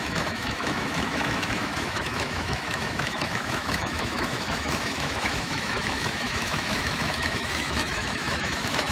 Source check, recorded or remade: remade